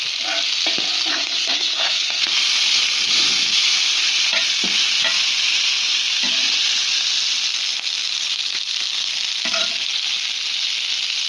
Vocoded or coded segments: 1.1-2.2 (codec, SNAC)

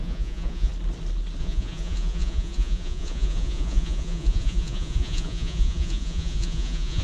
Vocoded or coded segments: 0.0-0.7 (vocoder, Vocos); 1.4-7.0

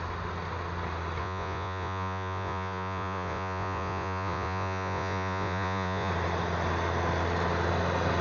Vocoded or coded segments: 1.2-6.1 (vocoder, Vocos)

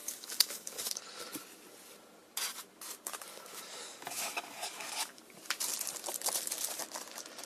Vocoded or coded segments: 0.0-1.0 (codec, DAC); 3.3-5.2

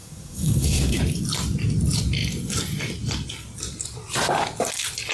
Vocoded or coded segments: 0.0-1.0 (codec, SNAC)

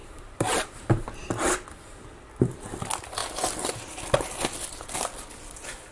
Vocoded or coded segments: 0.0-1.3 (vocoder, BigVGAN v2)